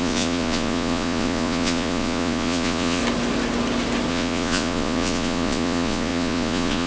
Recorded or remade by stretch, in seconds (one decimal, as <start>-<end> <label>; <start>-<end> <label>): 0.0-3.0 remade; 3.0-4.1 recorded; 4.1-6.9 remade